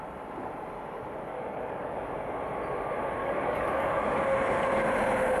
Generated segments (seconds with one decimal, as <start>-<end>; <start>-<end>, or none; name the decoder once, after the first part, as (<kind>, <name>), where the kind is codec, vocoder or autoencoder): 1.3-2.1 (codec, DAC); 3.2-4.2